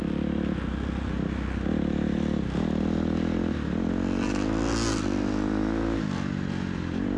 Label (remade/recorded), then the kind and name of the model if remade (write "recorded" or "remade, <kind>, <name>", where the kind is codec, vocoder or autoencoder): recorded